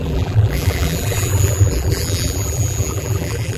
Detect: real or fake fake